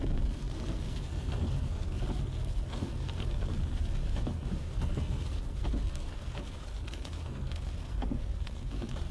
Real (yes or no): no